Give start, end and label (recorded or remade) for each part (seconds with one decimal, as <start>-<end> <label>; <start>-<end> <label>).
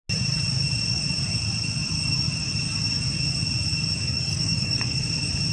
0.0-4.0 recorded; 4.0-5.0 remade; 5.0-5.5 recorded